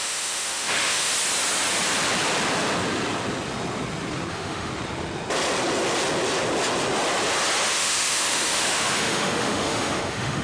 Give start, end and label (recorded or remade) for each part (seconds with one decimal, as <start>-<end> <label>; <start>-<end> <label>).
0.0-1.1 remade; 1.1-4.3 recorded; 4.3-4.7 remade; 4.7-7.7 recorded; 7.7-10.4 remade